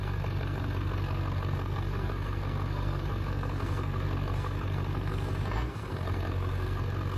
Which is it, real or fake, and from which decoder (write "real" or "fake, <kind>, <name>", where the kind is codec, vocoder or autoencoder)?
fake, codec, SNAC